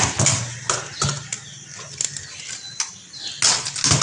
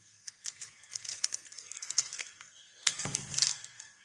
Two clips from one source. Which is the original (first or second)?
first